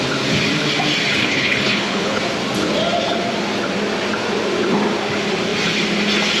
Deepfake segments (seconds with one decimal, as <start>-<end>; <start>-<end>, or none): 1.2-2.2